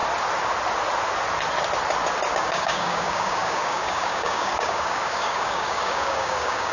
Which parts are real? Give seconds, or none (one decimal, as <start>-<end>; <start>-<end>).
0.0-2.3